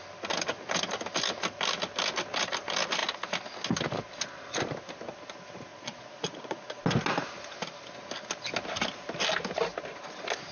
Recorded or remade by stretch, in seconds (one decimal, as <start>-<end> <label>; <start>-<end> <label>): 0.0-5.7 recorded; 5.7-6.8 remade; 6.8-10.5 recorded